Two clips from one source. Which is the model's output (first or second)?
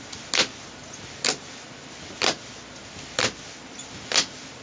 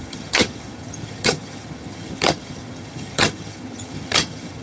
second